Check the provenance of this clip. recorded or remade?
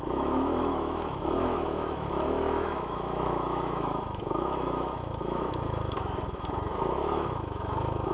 remade